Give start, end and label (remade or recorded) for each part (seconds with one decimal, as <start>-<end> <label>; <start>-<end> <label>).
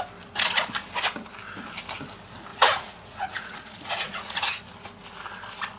0.0-2.5 recorded; 2.5-4.6 remade; 4.6-5.8 recorded